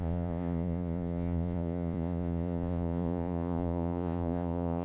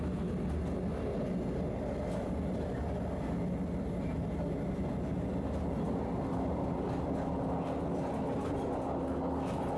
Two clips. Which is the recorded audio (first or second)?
second